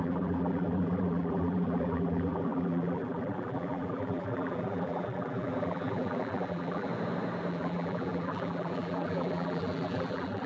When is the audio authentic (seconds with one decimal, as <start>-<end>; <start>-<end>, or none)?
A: 6.9-7.5